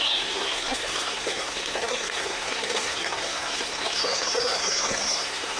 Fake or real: fake